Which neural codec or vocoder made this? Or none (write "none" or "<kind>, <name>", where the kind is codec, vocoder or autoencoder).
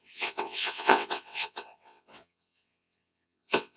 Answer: vocoder, WaveNeXt